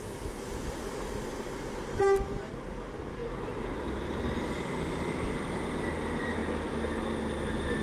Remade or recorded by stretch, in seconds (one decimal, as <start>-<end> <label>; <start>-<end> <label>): 0.0-3.2 remade; 3.2-3.8 recorded; 3.8-6.4 remade; 6.4-7.8 recorded